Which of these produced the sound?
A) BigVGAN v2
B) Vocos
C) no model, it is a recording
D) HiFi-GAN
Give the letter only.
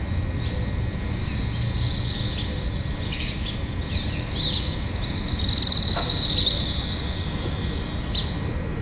C